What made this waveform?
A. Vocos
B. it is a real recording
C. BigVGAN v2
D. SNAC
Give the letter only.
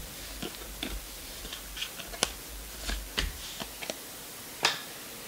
B